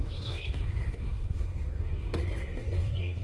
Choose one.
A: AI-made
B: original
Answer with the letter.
A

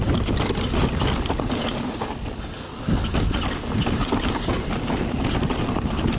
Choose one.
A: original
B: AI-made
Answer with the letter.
A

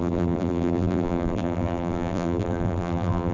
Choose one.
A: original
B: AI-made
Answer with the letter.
B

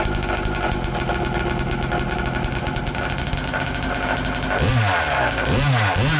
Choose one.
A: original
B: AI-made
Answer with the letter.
A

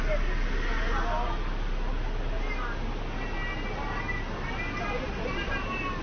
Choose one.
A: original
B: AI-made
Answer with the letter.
A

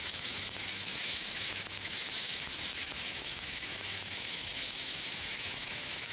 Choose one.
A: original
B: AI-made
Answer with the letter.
B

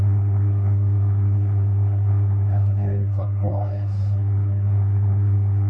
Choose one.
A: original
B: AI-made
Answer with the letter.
B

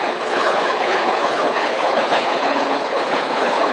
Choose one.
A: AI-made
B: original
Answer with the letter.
A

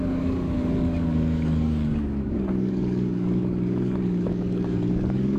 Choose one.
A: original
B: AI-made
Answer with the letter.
B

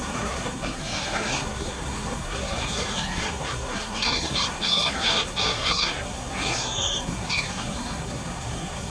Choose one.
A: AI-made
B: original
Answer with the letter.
A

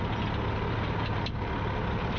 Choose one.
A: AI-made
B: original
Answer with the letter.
B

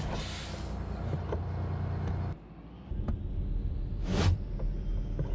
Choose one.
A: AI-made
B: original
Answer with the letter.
B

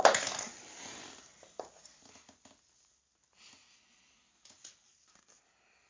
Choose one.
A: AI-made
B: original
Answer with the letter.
A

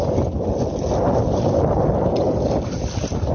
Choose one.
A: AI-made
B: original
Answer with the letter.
B